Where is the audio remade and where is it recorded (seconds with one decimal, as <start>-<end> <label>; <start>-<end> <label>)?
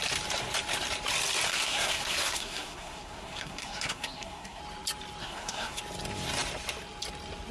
0.0-1.5 recorded; 1.5-4.6 remade; 4.6-5.2 recorded; 5.2-5.8 remade; 5.8-7.5 recorded